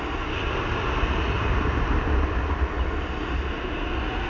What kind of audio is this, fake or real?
real